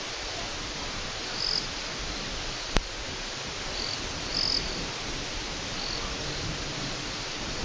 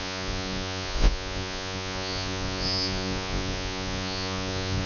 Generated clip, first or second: second